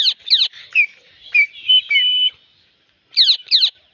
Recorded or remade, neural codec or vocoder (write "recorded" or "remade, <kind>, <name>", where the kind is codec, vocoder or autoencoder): recorded